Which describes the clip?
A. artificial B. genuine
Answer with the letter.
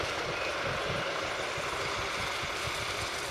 A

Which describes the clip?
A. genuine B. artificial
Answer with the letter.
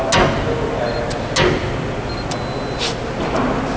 A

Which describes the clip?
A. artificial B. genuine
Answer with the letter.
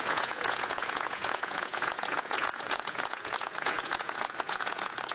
A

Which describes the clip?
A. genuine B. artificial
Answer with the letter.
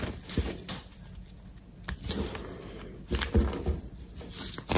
A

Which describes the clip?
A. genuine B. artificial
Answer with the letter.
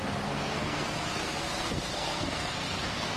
B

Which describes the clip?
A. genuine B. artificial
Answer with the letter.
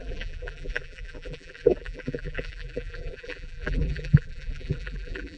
B